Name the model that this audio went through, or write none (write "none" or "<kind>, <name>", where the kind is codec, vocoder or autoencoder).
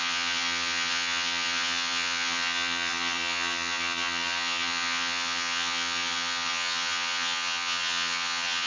vocoder, HiFi-GAN